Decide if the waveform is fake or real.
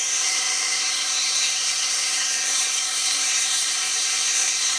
fake